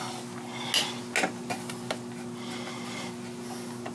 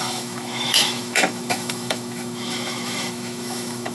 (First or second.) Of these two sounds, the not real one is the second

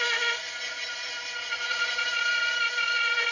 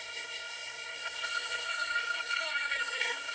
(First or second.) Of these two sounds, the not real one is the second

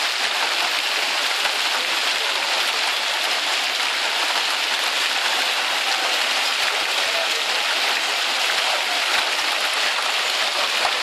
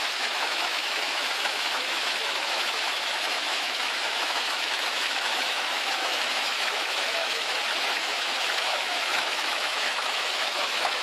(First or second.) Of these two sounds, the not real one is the second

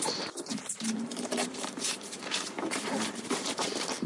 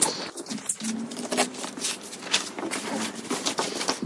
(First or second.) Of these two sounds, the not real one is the first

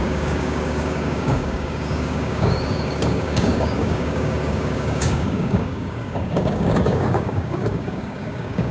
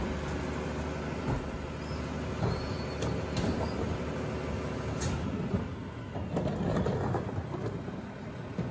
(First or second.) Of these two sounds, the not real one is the first